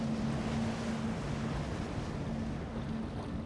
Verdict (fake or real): real